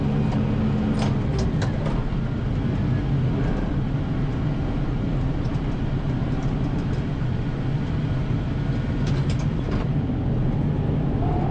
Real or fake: real